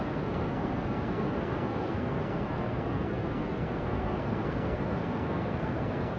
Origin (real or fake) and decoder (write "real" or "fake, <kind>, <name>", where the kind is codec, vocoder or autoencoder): fake, codec, SNAC